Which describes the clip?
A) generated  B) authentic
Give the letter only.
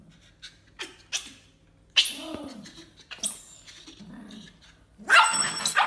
B